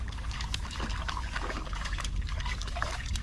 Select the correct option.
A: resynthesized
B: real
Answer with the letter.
A